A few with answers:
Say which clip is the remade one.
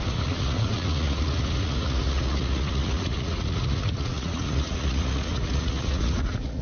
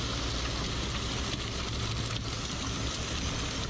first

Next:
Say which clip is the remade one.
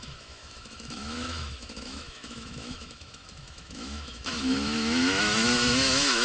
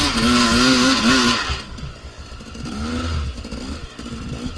first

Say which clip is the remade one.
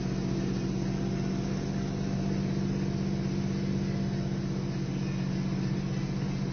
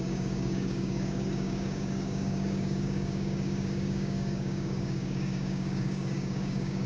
second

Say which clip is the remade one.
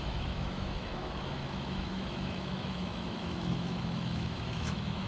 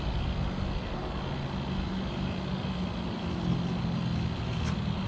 first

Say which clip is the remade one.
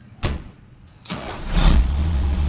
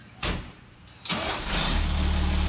first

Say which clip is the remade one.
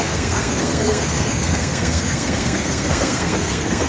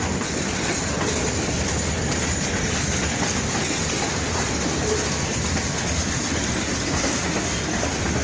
first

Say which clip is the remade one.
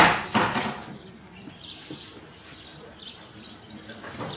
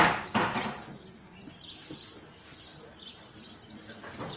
first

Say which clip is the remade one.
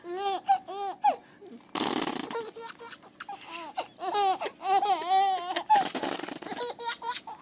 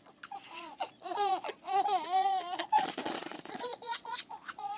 second